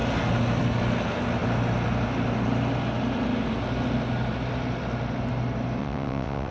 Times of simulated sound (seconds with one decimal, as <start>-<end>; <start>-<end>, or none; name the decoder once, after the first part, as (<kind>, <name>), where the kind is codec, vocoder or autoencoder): 5.8-6.5 (vocoder, WaveNeXt)